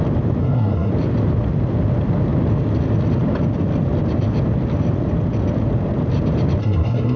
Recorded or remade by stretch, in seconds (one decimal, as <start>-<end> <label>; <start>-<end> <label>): 0.0-0.4 recorded; 0.4-0.9 remade; 0.9-6.6 recorded; 6.6-7.2 remade